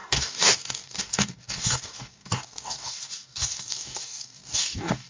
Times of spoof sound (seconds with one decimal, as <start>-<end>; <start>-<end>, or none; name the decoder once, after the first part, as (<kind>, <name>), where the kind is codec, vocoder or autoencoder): 0.0-5.1 (codec, DAC)